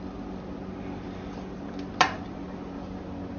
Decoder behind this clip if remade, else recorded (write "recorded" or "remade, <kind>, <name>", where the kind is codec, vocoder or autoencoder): recorded